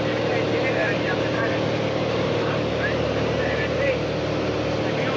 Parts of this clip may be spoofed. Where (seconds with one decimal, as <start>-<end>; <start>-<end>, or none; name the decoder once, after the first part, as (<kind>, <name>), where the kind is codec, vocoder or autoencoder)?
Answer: 0.8-3.9 (vocoder, BigVGAN v2)